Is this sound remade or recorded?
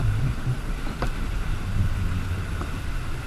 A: remade